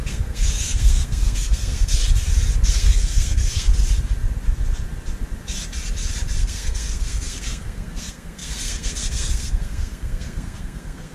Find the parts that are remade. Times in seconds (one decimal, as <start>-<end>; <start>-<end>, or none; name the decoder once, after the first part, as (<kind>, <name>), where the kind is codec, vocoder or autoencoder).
0.0-2.0 (codec, SNAC); 2.7-3.7; 6.4-11.1